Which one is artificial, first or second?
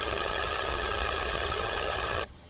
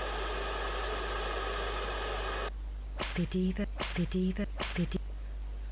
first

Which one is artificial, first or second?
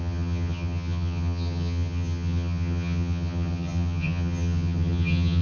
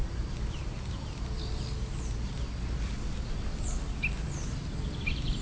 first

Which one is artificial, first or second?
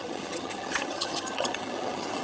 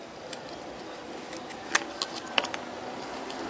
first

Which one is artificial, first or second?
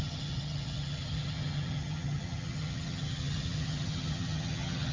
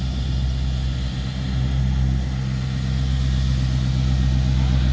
first